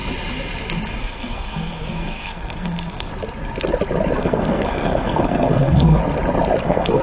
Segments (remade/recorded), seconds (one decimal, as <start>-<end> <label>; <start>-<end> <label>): 0.0-1.0 recorded; 1.0-3.1 remade; 3.1-4.2 recorded; 4.2-6.0 remade; 6.0-6.6 recorded; 6.6-7.0 remade